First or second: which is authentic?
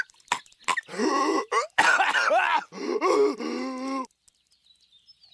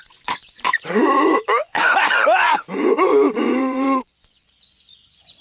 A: first